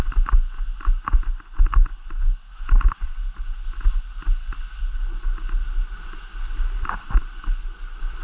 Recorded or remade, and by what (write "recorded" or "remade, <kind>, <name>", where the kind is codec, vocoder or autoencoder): recorded